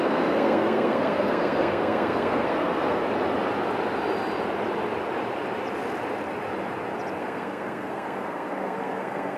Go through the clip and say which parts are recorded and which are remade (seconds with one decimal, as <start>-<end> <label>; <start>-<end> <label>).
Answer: 0.0-3.0 remade; 3.0-7.2 recorded; 7.2-9.4 remade